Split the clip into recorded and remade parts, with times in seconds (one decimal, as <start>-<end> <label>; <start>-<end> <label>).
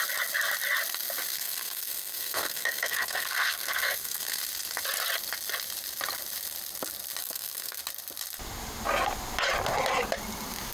0.0-1.3 recorded; 1.3-4.4 remade; 4.4-7.2 recorded; 7.2-7.8 remade; 7.8-10.7 recorded